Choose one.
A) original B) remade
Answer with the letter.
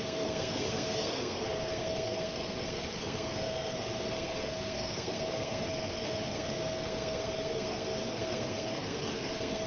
B